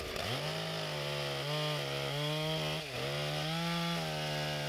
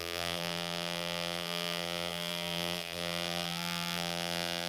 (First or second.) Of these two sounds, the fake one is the second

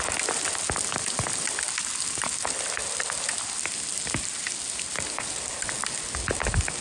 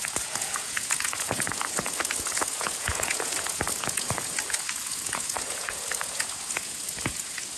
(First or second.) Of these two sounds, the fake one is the second